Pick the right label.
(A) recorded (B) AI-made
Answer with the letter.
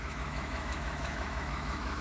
B